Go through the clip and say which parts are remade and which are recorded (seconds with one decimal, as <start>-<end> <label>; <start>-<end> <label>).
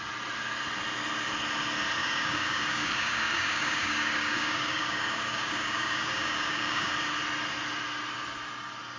0.0-2.0 recorded; 2.0-6.9 remade; 6.9-9.0 recorded